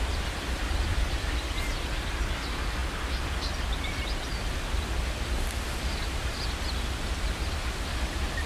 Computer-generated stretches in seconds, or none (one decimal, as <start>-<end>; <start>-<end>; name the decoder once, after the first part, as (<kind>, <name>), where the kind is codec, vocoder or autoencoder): none